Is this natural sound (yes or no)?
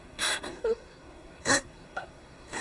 no